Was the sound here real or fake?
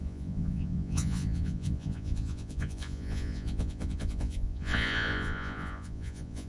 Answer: fake